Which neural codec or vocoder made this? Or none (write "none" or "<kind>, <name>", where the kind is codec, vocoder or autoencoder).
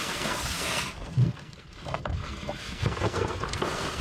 codec, SNAC